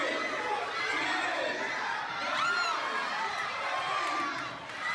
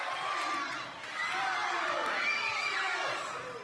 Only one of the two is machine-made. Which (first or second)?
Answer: second